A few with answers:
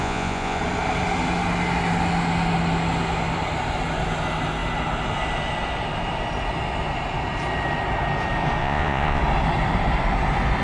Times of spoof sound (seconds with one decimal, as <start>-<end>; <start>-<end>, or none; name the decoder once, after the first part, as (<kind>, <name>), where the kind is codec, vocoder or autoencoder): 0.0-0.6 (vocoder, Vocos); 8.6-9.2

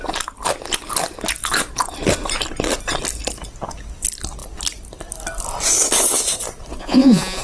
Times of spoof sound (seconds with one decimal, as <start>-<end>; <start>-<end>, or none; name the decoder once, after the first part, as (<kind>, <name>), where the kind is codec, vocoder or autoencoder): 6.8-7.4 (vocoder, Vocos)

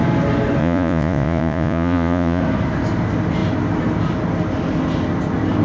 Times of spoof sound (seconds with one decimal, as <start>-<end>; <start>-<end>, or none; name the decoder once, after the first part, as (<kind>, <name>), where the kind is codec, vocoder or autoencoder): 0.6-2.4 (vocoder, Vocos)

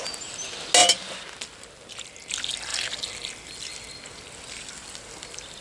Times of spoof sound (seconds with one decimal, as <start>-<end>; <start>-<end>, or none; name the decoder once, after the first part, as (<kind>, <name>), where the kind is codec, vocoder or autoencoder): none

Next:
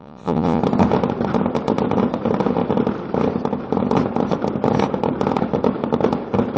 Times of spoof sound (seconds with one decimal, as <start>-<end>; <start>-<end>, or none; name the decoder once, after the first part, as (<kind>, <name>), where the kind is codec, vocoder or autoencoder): 0.0-0.6 (vocoder, Vocos)